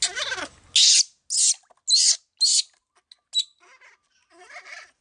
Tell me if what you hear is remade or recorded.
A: recorded